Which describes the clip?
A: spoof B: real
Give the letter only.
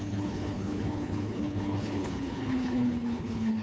A